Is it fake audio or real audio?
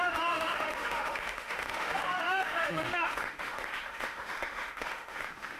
fake